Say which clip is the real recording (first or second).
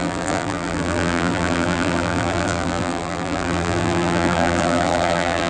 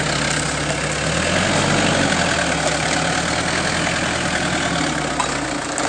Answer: second